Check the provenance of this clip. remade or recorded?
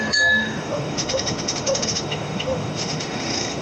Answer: remade